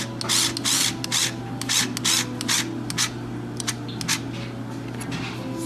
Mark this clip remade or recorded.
recorded